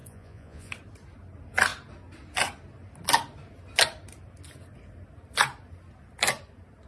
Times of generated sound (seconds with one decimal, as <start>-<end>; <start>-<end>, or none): 0.0-0.7